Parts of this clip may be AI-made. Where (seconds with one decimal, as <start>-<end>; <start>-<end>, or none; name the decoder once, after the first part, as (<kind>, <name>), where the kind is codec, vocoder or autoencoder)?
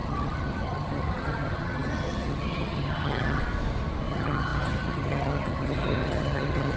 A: 0.0-3.4 (vocoder, HiFi-GAN); 4.1-6.8